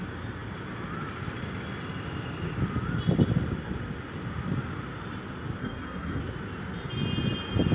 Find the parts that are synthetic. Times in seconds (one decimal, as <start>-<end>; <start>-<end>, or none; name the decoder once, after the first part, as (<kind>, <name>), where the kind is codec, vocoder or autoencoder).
5.6-6.2 (codec, SNAC)